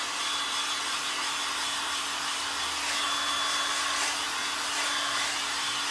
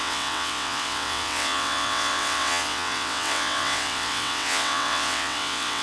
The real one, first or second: first